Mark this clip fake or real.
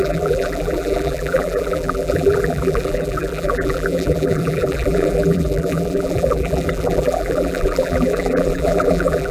fake